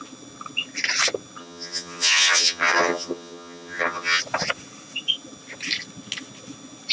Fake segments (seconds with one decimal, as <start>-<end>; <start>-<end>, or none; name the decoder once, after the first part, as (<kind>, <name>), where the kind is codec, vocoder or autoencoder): 1.4-4.2 (vocoder, HiFi-GAN)